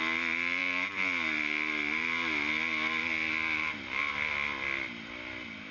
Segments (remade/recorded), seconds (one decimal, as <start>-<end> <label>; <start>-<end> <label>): 0.0-5.7 recorded